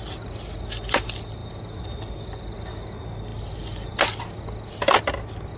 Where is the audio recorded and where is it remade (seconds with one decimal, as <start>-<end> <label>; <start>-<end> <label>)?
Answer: 0.0-5.6 recorded